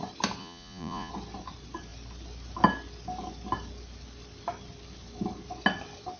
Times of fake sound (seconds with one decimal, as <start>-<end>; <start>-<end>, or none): 0.4-1.1